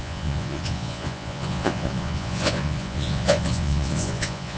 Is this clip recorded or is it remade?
remade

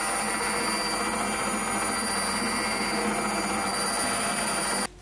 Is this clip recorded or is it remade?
recorded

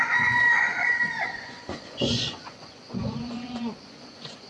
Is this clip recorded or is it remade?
remade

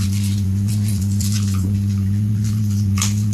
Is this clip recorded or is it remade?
remade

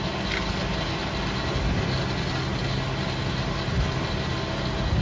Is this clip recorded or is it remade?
recorded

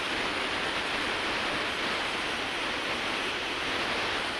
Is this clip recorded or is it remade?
recorded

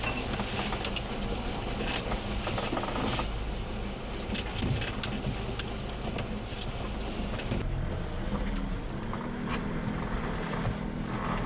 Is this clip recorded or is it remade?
recorded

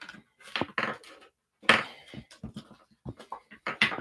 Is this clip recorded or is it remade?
recorded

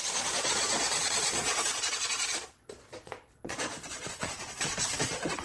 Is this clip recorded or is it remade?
remade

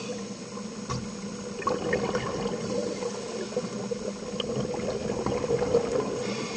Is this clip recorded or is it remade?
recorded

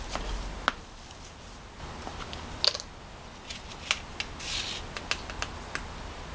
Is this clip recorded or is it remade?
recorded